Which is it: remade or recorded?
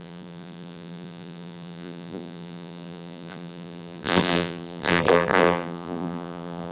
remade